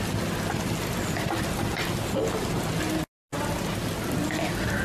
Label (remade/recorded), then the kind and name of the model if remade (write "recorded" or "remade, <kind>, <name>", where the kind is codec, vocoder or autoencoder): recorded